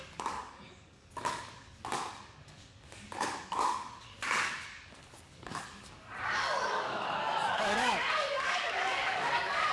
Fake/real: fake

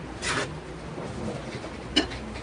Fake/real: real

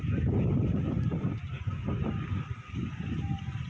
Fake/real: real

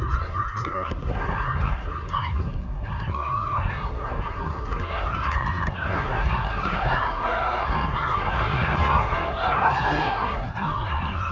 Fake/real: fake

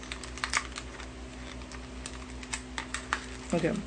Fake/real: real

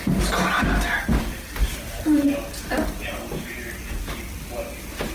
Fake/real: real